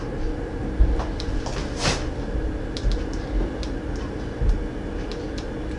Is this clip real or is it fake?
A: real